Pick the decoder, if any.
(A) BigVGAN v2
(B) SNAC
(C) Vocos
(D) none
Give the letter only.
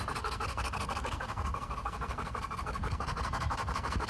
B